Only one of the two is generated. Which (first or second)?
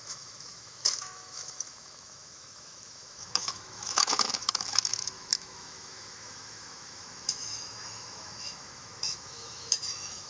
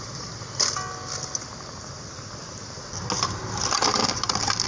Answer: first